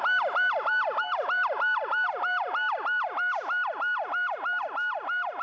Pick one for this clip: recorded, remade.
recorded